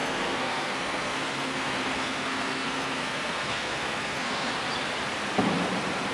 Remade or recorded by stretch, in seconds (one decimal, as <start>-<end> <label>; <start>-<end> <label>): 0.0-4.5 remade; 4.5-6.1 recorded